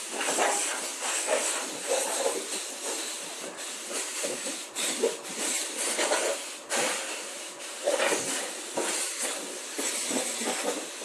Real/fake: real